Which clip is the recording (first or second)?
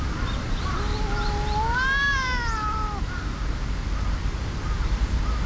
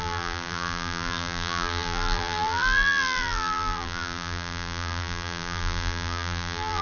first